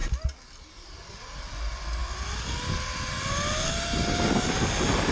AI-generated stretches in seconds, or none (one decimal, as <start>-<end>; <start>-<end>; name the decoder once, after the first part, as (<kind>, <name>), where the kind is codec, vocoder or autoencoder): none